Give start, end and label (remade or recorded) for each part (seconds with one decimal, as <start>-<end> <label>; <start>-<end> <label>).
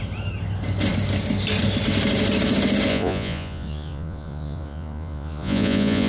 0.0-2.9 recorded; 2.9-6.1 remade